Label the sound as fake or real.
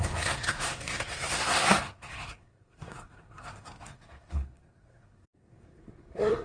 fake